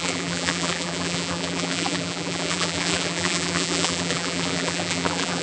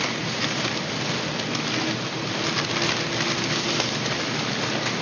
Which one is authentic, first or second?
second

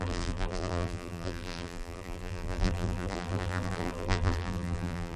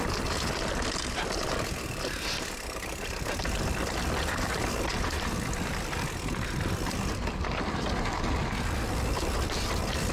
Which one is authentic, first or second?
second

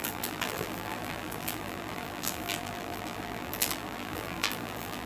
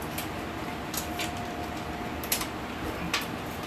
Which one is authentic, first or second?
second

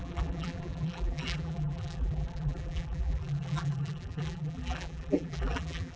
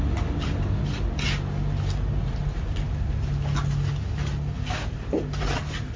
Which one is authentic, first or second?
second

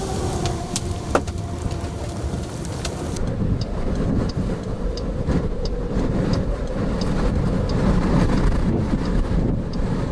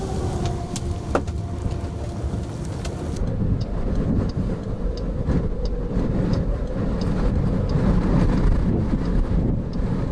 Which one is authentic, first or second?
second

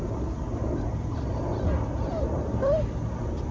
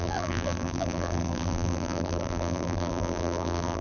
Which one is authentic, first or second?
first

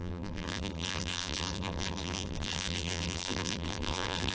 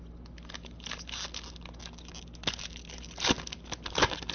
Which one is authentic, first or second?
second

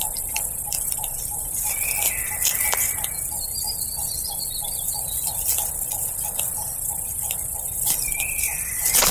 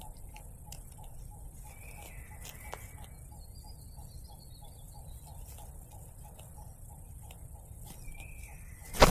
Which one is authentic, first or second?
second